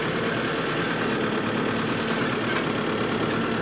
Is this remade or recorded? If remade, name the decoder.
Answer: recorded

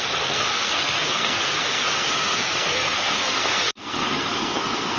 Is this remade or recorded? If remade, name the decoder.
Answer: remade, codec, SNAC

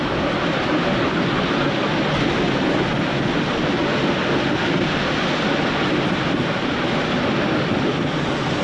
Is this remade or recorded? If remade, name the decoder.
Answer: recorded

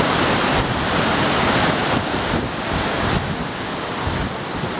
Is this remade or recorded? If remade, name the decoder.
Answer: recorded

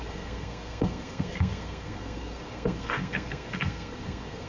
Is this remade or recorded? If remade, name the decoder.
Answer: remade, codec, SNAC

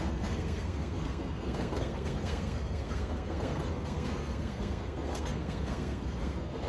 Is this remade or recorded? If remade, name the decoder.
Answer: remade, codec, SNAC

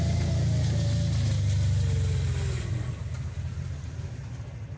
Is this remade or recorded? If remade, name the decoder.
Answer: recorded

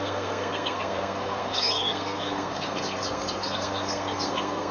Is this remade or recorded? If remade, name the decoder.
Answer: remade, codec, SNAC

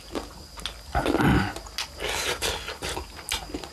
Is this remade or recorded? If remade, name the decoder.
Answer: recorded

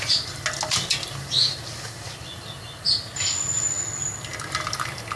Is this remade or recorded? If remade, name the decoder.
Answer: recorded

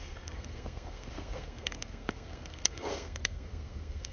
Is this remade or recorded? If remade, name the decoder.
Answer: remade, codec, SNAC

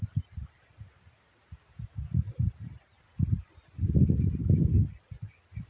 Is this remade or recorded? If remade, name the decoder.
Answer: recorded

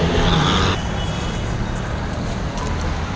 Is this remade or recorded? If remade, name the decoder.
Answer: recorded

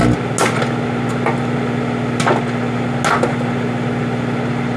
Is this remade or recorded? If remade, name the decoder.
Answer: recorded